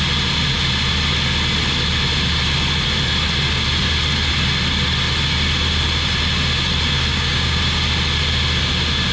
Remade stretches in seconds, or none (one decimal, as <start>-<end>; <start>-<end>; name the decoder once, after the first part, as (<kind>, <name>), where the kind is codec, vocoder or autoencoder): 7.1-7.6 (codec, DAC)